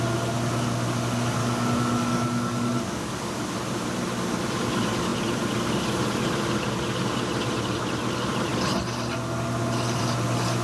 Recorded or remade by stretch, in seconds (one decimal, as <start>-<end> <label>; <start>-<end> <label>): 0.0-1.4 recorded; 1.4-3.3 remade; 3.3-10.6 recorded